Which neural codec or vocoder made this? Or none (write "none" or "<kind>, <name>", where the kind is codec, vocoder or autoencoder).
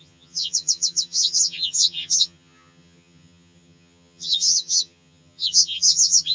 vocoder, HiFi-GAN